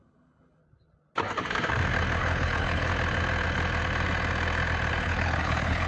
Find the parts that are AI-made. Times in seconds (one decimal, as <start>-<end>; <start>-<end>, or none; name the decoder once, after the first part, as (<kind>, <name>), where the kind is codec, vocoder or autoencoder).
0.0-0.6 (codec, HILCodec); 2.2-2.9; 5.0-5.9